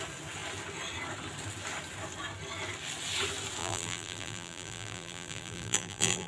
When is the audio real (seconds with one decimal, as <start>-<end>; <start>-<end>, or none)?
0.0-3.6